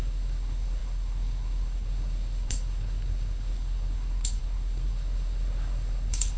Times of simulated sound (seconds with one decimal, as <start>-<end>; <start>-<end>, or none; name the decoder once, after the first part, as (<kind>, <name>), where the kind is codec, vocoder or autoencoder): 0.0-6.4 (codec, SNAC)